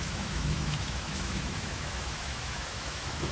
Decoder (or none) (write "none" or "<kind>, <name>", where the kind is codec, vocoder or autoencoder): autoencoder, DAC-VAE